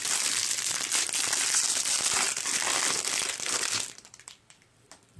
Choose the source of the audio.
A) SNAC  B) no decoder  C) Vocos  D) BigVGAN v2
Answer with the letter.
D